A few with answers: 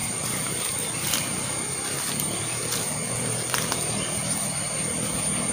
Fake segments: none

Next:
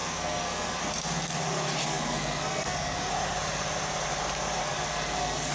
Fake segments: 0.0-0.8 (codec, SNAC); 1.8-3.1; 4.6-5.5